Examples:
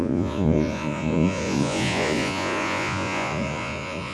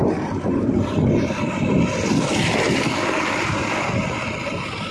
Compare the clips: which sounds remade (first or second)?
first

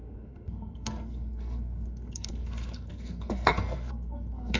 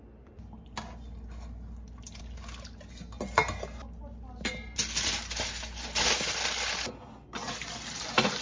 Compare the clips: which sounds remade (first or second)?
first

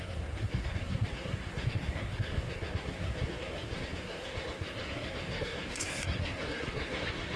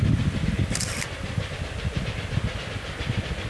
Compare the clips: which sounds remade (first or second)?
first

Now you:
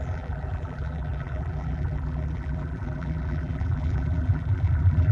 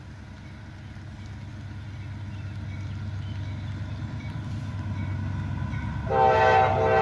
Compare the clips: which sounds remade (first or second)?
first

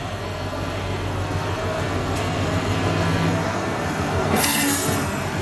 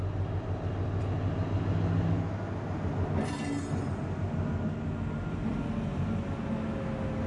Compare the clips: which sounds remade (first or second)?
first